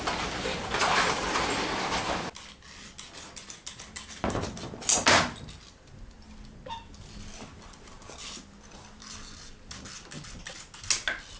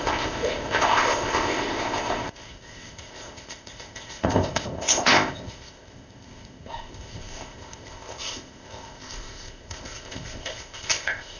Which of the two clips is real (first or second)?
first